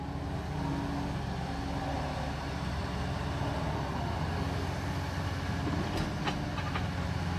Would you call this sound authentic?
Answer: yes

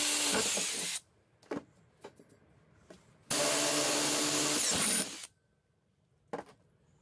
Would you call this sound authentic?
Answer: yes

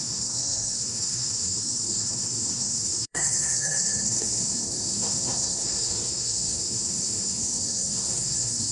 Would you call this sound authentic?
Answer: no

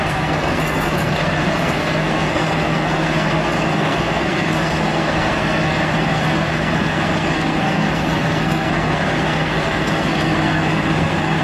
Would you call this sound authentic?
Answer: no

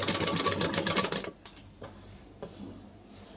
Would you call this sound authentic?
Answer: yes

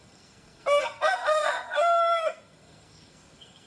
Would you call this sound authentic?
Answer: no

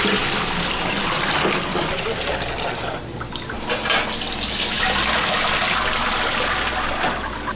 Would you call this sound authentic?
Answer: yes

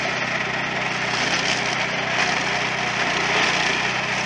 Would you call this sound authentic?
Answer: yes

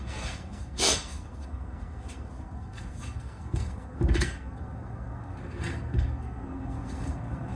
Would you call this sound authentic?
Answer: no